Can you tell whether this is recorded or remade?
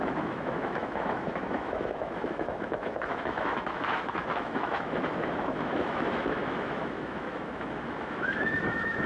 remade